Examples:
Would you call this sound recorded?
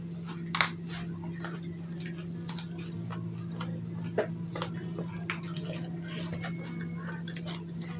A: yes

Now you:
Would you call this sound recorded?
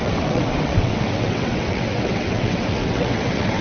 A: no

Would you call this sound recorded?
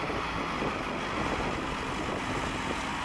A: yes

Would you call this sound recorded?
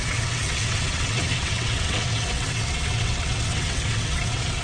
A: no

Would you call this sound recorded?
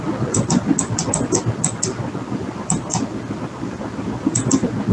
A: yes